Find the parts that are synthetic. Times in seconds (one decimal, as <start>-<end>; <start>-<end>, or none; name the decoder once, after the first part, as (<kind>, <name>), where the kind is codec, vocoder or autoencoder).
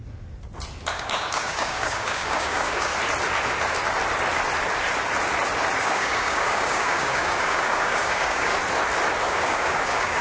0.9-2.9 (codec, DAC); 5.8-8.5; 9.3-10.2